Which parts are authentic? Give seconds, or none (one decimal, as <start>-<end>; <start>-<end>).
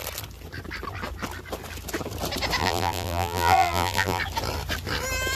0.0-2.6; 4.2-5.4